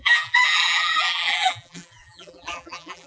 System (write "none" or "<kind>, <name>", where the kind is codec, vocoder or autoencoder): vocoder, BigVGAN v2